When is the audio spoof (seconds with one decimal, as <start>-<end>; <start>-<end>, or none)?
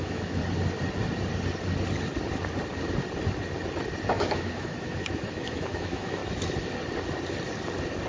0.0-0.4; 4.1-6.2